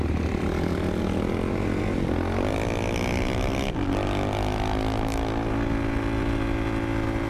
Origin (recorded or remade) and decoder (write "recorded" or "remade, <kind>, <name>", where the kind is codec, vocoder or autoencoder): recorded